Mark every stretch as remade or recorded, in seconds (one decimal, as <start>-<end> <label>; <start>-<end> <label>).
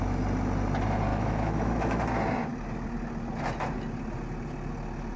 0.0-1.1 recorded; 1.1-2.0 remade; 2.0-5.2 recorded